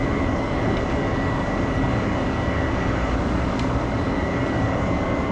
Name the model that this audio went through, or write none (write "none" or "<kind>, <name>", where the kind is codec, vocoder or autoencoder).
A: codec, DAC